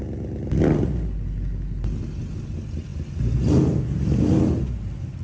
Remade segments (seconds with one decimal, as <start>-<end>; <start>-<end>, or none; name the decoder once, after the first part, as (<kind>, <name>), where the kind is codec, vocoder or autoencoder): none